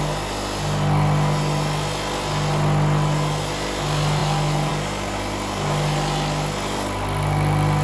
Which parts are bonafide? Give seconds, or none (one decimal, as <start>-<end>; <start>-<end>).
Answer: 0.0-7.8